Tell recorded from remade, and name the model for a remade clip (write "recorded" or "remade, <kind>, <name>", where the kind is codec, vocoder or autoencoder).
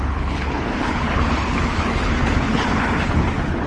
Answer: remade, codec, HILCodec